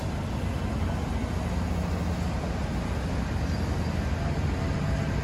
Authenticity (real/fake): real